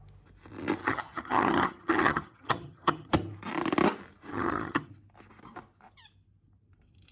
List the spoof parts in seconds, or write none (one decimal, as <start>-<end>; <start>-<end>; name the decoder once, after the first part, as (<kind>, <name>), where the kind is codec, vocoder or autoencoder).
0.8-3.1 (vocoder, HiFi-GAN); 4.3-4.9